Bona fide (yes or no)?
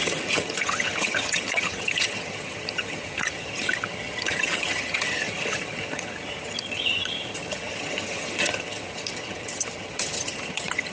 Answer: no